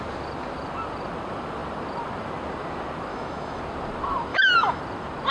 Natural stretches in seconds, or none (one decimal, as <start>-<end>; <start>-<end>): 0.0-3.1; 3.6-4.3; 4.8-5.3